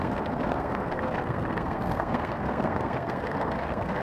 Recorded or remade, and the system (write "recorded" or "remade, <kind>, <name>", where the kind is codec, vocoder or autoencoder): remade, codec, SNAC